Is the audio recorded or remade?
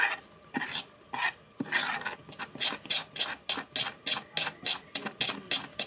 recorded